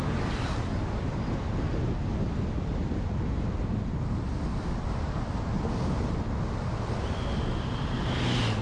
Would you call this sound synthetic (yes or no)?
no